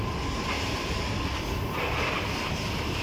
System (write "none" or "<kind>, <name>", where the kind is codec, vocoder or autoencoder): none